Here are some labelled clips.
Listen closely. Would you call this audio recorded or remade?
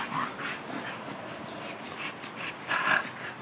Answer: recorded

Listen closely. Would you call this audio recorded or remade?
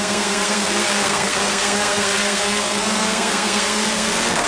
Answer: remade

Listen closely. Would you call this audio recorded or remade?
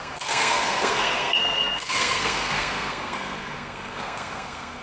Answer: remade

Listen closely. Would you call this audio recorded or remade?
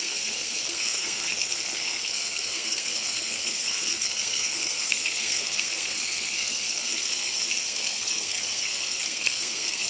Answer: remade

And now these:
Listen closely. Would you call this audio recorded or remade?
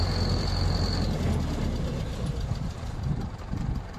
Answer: recorded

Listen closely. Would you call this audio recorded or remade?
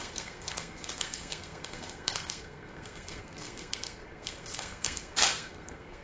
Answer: remade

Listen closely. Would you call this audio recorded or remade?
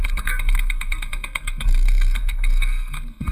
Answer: remade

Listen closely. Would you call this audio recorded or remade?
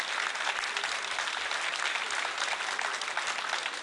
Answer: recorded